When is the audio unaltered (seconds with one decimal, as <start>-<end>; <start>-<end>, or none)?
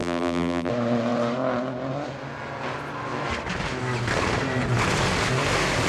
0.7-5.9